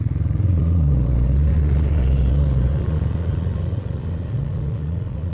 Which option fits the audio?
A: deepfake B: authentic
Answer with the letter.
A